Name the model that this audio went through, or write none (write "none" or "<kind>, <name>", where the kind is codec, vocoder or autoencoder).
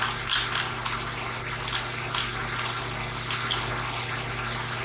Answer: none